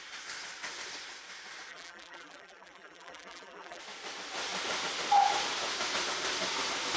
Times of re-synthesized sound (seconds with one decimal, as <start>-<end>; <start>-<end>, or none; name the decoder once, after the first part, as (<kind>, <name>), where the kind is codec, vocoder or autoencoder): 1.7-3.8 (vocoder, BigVGAN v2)